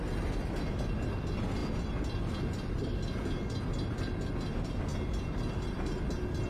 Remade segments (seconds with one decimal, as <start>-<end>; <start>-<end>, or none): none